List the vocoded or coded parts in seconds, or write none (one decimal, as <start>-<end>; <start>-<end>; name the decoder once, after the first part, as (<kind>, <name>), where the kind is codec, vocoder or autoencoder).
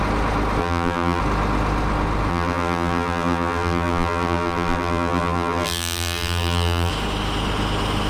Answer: 0.6-1.2 (vocoder, BigVGAN v2); 2.3-6.9